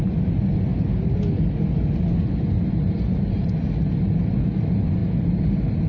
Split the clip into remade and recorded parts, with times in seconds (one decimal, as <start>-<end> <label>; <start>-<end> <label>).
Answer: 0.0-5.9 recorded

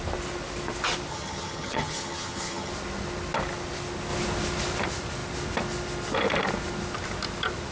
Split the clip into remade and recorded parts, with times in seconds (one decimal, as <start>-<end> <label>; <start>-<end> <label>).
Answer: 0.0-1.1 recorded; 1.1-2.7 remade; 2.7-7.7 recorded

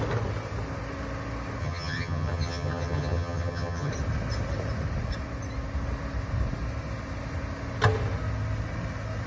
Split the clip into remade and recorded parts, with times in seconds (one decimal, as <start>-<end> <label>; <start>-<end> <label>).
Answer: 0.0-1.6 recorded; 1.6-3.9 remade; 3.9-9.3 recorded

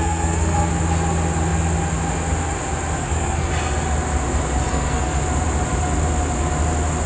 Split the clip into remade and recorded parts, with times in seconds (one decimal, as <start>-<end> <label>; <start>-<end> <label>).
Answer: 0.0-0.7 remade; 0.7-3.0 recorded; 3.0-3.5 remade; 3.5-4.7 recorded; 4.7-5.2 remade; 5.2-7.1 recorded

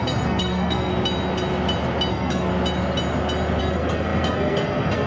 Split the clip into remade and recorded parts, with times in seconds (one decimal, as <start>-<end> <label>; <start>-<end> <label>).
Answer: 0.0-0.9 remade; 0.9-2.1 recorded; 2.1-2.5 remade; 2.5-3.6 recorded; 3.6-5.1 remade

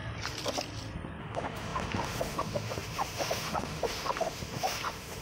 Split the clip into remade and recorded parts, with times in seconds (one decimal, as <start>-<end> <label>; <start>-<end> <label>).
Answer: 0.0-1.2 recorded; 1.2-5.2 remade

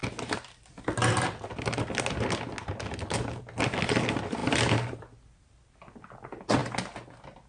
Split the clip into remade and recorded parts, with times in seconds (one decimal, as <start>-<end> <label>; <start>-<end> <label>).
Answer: 0.0-4.4 recorded; 4.4-5.0 remade; 5.0-7.5 recorded

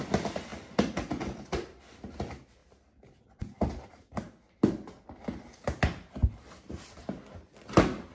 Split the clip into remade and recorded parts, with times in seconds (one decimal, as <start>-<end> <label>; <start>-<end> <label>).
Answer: 0.0-8.1 recorded